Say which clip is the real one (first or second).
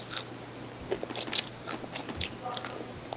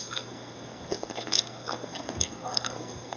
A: first